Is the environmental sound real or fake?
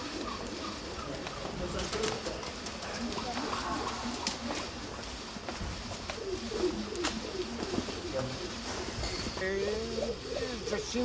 real